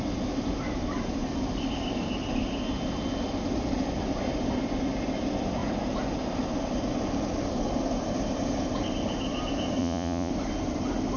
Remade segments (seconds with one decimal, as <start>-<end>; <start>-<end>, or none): 9.8-10.3